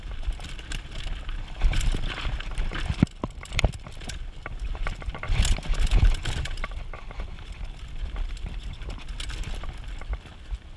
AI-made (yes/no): no